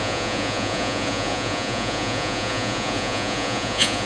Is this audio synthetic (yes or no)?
yes